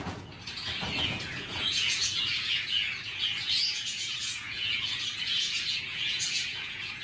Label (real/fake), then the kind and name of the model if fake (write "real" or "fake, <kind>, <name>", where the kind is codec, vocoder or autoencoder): fake, vocoder, Vocos